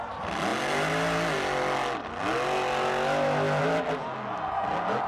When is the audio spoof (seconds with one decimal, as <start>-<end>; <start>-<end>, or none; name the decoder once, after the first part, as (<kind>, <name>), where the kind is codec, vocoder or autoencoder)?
none